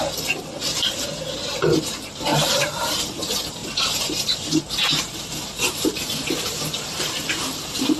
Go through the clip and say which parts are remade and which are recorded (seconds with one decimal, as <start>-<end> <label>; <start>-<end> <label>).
0.0-2.3 recorded; 2.3-3.0 remade; 3.0-3.6 recorded; 3.6-6.1 remade; 6.1-8.0 recorded